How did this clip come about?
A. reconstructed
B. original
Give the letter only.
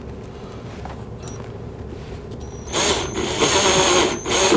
B